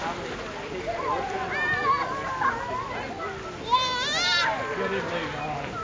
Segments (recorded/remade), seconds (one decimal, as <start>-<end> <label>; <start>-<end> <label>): 0.0-5.8 recorded